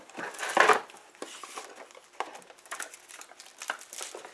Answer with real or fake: real